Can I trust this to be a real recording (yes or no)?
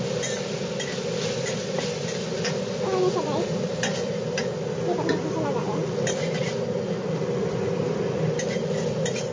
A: yes